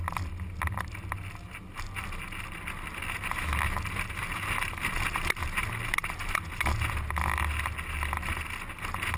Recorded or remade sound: recorded